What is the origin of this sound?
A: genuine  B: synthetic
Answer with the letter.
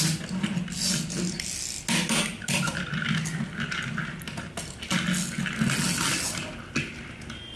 A